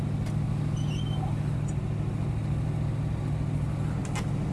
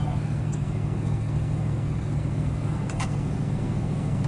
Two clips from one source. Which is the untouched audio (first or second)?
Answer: first